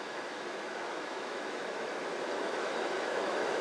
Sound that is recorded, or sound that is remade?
remade